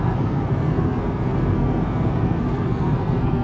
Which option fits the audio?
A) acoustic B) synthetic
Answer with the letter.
B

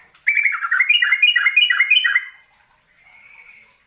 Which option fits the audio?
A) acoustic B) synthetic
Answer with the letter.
A